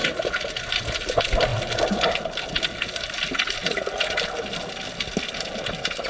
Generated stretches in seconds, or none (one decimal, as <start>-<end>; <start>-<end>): none